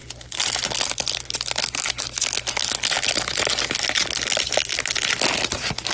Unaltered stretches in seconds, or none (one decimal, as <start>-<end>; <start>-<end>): 0.0-5.9